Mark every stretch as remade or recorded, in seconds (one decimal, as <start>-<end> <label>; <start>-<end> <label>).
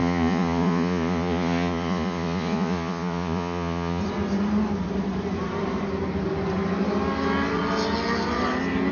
0.0-4.0 remade; 4.0-8.9 recorded